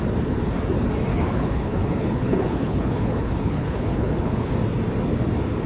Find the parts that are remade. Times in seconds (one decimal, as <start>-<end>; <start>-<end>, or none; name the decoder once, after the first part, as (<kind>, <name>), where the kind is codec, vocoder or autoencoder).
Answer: 1.1-4.5 (codec, HILCodec)